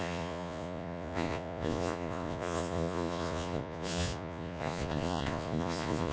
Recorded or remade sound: remade